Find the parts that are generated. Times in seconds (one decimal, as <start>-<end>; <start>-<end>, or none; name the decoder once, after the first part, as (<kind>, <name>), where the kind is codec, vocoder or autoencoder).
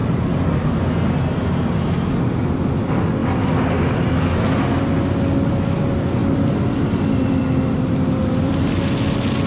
6.2-8.7 (vocoder, BigVGAN v2)